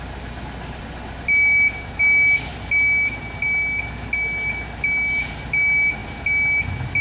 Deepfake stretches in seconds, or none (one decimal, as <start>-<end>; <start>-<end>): none